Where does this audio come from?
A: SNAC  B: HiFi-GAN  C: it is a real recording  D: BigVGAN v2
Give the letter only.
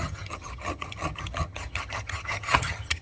B